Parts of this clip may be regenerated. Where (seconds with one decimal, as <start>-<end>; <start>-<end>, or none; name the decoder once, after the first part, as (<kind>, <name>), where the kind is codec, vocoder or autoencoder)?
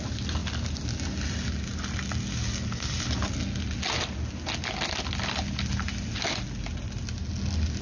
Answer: none